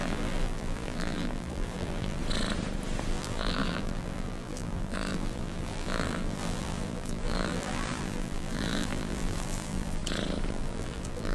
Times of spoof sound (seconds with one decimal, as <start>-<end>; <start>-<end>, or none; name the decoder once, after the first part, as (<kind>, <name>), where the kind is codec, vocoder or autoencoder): 0.0-2.2 (vocoder, BigVGAN v2); 3.1-10.0; 10.5-11.3